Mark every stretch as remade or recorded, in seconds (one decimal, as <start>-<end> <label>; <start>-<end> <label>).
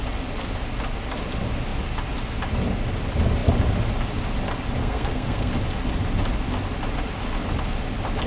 0.0-4.8 recorded; 4.8-5.5 remade; 5.5-8.3 recorded